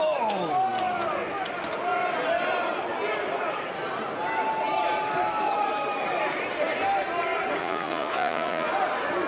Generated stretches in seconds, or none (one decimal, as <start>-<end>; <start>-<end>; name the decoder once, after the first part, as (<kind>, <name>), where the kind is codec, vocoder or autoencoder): 7.6-8.7 (vocoder, Vocos)